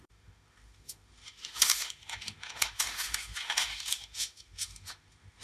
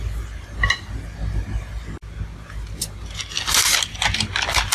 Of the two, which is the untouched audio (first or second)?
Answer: second